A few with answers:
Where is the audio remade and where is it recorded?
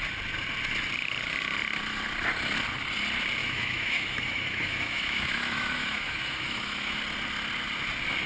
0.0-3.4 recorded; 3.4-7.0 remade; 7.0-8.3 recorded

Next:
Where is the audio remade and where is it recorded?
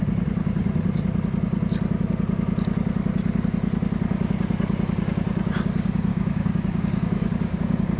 0.0-6.1 recorded; 6.1-8.0 remade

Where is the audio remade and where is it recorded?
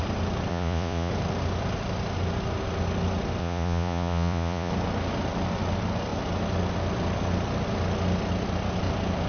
0.0-0.5 recorded; 0.5-1.1 remade; 1.1-3.4 recorded; 3.4-4.7 remade; 4.7-9.3 recorded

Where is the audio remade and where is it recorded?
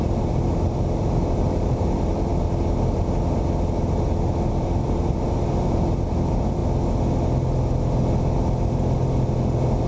0.0-2.3 remade; 2.3-4.5 recorded; 4.5-6.6 remade; 6.6-9.9 recorded